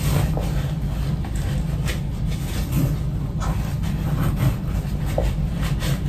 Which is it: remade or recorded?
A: recorded